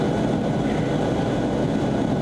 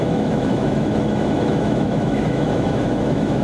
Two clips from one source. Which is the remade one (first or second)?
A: second